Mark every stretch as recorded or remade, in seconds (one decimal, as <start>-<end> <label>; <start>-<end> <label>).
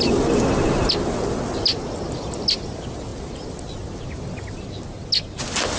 0.0-5.8 recorded